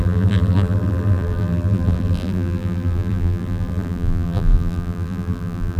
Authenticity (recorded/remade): remade